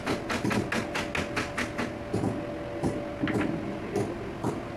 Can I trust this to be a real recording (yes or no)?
yes